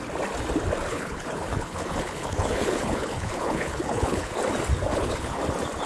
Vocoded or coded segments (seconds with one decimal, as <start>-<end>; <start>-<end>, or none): 0.9-4.4; 4.9-5.4